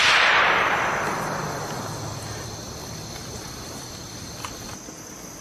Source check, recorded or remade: recorded